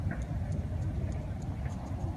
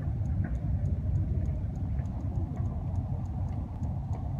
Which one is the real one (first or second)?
second